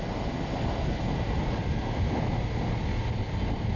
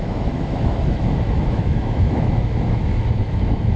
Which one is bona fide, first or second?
first